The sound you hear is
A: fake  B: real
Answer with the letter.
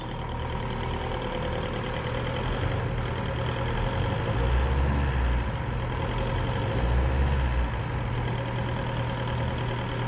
B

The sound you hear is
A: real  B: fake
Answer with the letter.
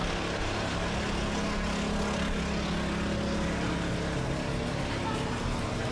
A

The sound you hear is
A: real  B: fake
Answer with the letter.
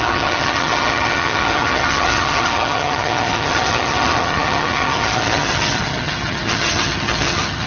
B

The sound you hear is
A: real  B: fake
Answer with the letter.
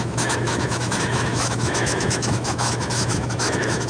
B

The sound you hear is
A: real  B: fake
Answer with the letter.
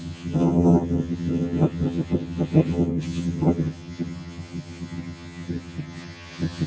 B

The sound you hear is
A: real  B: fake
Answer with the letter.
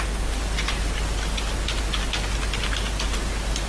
A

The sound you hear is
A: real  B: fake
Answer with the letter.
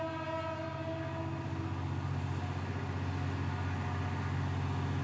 A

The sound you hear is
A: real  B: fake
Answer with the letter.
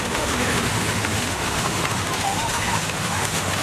B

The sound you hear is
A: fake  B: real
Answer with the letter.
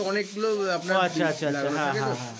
A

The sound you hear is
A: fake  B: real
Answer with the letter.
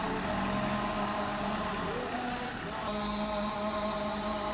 B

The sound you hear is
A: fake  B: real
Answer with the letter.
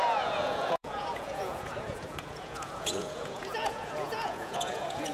A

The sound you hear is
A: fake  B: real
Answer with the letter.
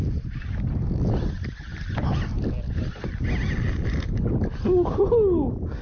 B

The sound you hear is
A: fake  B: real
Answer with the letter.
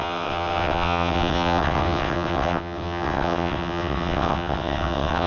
A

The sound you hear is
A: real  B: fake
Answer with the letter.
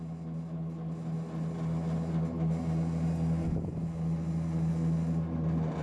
A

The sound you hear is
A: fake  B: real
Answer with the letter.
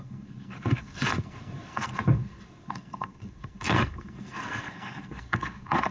A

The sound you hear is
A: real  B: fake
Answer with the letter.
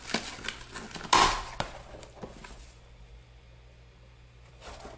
A